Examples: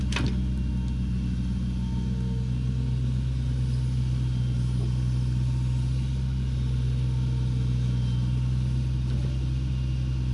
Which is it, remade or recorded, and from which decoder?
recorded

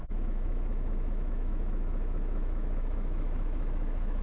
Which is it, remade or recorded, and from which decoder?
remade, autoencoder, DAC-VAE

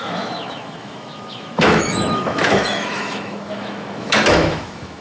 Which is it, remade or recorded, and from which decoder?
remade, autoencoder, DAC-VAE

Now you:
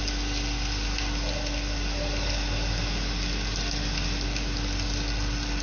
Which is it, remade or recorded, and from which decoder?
recorded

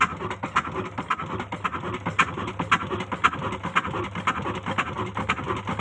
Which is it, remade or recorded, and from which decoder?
recorded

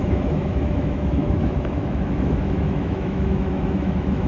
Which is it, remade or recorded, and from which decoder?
remade, autoencoder, DAC-VAE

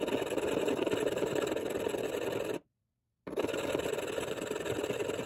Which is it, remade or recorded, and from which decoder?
recorded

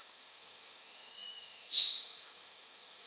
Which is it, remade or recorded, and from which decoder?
remade, autoencoder, DAC-VAE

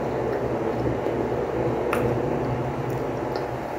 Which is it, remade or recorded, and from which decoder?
recorded